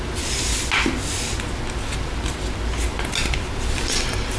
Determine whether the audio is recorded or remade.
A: recorded